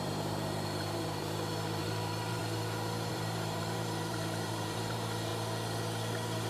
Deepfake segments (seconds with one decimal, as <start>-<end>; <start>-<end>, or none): 0.0-2.4; 3.1-5.3